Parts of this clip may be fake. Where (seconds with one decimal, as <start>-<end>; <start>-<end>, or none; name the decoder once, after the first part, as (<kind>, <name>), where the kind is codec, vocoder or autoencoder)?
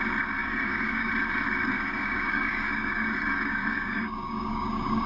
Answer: 0.4-1.1 (codec, DAC); 1.6-5.1